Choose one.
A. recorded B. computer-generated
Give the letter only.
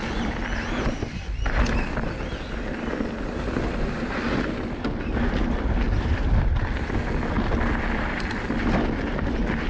A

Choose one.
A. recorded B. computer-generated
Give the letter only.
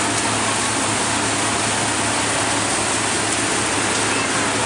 A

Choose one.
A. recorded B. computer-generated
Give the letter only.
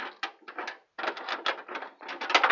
A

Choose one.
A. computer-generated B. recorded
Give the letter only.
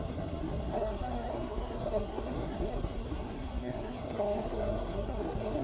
A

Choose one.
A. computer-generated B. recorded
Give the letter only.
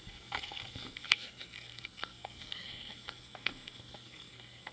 A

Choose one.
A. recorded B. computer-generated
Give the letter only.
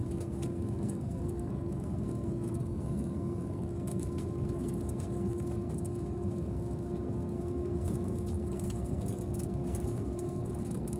B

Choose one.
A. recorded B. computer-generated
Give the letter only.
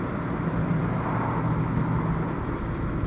A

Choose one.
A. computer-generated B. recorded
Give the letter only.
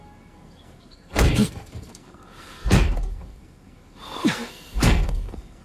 A